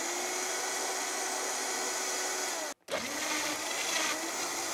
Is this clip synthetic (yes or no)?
no